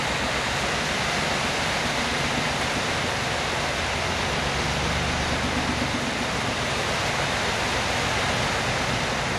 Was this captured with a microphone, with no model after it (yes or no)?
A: yes